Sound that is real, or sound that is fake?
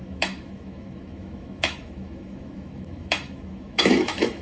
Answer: fake